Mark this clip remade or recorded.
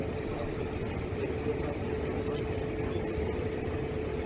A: recorded